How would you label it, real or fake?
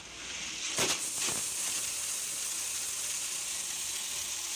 real